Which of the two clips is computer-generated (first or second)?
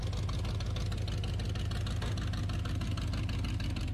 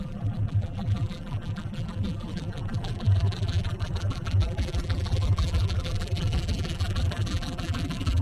second